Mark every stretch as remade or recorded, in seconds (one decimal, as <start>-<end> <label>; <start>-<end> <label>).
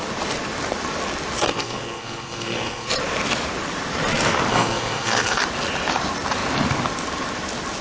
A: 0.0-1.5 recorded; 1.5-2.9 remade; 2.9-4.5 recorded; 4.5-5.4 remade; 5.4-7.8 recorded